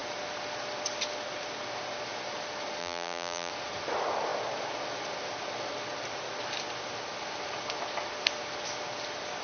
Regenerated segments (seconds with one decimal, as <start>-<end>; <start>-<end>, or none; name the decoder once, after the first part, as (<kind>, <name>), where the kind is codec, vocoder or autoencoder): 2.8-3.5 (vocoder, BigVGAN v2)